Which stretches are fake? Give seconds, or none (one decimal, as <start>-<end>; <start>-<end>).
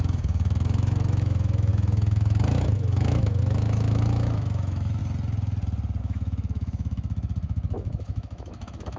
0.0-5.0; 6.0-9.0